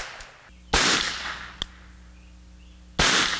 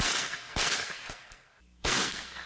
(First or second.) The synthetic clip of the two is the second